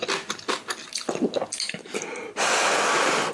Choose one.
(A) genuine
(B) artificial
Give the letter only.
A